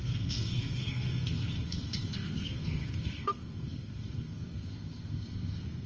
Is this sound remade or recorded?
remade